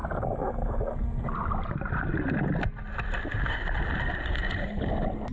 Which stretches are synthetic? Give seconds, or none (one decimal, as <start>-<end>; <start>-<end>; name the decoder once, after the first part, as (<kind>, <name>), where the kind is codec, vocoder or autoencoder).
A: none